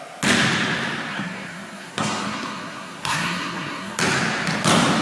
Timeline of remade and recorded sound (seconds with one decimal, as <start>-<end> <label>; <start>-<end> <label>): 0.0-1.1 recorded; 1.1-4.0 remade; 4.0-5.0 recorded